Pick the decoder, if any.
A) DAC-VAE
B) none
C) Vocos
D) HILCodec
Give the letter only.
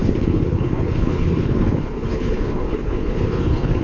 D